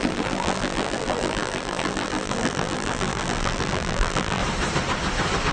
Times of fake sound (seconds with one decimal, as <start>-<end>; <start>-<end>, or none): 0.0-4.4